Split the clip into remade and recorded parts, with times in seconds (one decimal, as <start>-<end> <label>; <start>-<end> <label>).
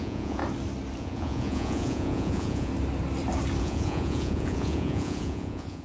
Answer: 0.0-0.4 remade; 0.4-1.0 recorded; 1.0-2.7 remade; 2.7-3.6 recorded; 3.6-5.8 remade